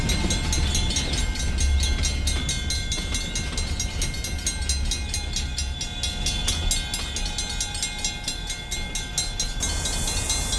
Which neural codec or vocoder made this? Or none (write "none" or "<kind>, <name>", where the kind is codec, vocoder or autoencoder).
none